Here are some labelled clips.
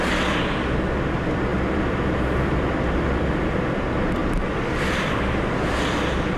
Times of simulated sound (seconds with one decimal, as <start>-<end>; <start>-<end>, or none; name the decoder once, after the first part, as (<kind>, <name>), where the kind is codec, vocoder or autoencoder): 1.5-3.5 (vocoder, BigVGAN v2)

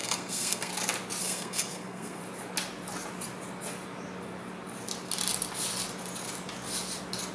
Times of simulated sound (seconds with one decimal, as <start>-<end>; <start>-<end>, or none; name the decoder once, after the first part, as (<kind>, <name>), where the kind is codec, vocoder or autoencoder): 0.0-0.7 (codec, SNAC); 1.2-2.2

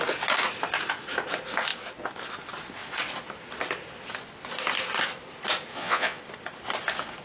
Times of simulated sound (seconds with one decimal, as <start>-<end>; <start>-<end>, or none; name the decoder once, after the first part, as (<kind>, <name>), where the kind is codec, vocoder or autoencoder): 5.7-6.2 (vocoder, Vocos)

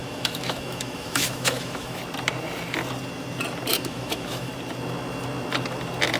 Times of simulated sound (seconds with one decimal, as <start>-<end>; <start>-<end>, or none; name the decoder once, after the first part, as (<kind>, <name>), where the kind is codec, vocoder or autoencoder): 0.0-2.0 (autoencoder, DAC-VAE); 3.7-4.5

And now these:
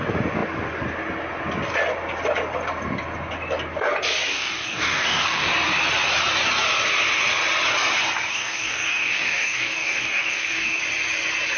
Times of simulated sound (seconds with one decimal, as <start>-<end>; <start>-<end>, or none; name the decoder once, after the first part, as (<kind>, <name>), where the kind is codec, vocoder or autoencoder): 4.3-5.5 (codec, DAC); 8.3-10.8

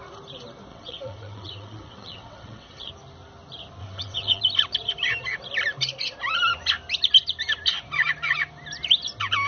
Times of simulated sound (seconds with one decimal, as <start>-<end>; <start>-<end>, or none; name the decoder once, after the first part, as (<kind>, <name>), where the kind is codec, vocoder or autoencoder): 0.7-2.9 (vocoder, WaveNeXt); 3.8-4.4